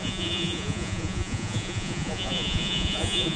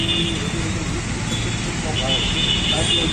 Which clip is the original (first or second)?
second